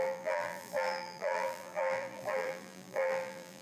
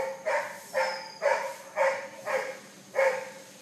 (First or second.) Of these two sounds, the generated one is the first